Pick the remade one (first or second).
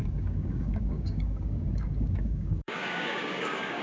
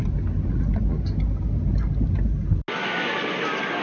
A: first